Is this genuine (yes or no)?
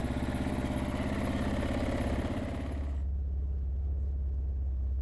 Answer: yes